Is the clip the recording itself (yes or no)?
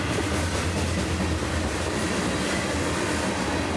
yes